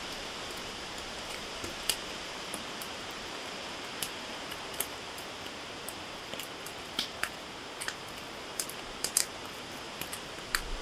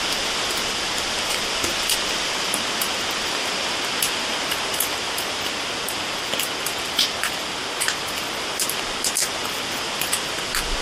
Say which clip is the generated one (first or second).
first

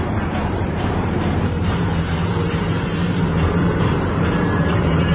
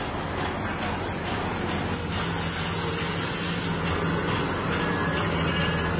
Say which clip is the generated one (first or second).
first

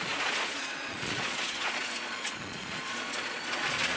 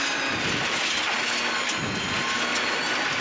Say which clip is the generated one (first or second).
first